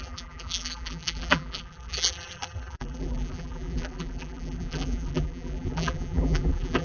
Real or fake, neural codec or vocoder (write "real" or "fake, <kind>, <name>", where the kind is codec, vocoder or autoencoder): fake, vocoder, BigVGAN v2